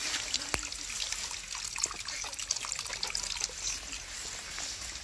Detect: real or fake real